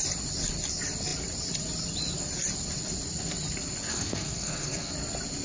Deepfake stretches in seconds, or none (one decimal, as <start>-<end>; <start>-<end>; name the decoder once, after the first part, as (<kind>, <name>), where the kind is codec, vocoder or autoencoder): 3.9-4.9 (codec, SNAC)